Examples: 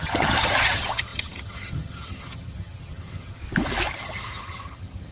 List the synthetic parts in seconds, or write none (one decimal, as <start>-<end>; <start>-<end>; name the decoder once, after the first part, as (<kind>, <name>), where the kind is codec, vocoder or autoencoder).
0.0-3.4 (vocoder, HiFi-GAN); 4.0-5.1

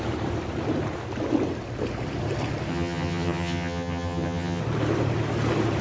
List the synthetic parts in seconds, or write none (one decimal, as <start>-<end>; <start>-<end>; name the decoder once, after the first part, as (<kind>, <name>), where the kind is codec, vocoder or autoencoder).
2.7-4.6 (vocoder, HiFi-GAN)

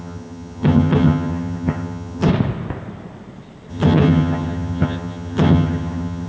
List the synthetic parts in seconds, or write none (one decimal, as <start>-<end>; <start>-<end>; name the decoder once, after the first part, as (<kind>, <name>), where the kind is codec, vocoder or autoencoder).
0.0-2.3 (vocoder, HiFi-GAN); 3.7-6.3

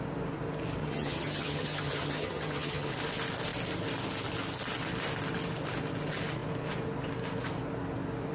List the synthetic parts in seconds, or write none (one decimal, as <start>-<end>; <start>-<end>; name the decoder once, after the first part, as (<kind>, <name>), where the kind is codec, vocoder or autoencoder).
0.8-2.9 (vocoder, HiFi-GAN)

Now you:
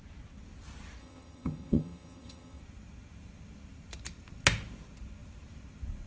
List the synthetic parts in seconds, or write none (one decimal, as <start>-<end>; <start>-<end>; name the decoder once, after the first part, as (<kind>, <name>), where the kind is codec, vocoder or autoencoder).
1.0-2.6 (vocoder, HiFi-GAN)